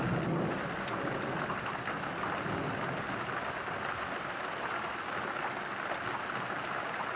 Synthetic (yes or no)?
no